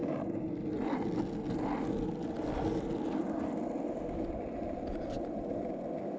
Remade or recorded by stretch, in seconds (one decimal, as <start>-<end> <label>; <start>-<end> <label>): 0.0-6.2 recorded